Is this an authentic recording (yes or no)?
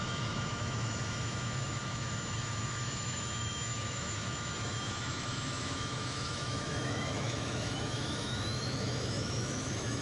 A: no